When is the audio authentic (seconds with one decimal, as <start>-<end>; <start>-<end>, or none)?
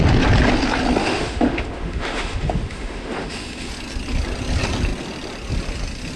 0.0-1.0; 3.7-6.2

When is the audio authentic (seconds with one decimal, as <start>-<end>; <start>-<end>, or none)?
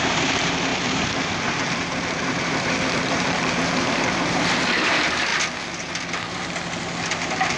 5.3-7.6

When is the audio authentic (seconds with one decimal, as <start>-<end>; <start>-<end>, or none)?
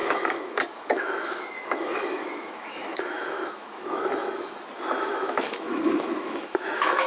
none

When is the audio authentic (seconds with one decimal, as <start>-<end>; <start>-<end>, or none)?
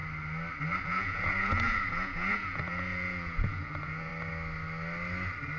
0.0-0.8; 4.1-5.6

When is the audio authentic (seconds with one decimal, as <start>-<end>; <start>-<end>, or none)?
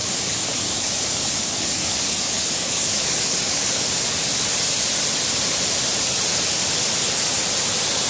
3.9-8.1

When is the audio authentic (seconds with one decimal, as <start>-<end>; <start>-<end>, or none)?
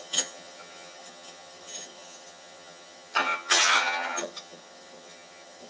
none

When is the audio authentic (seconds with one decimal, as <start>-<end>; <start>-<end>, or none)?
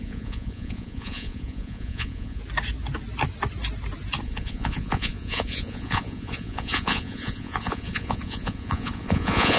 2.4-4.2